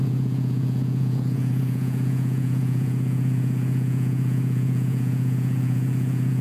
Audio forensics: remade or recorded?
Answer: remade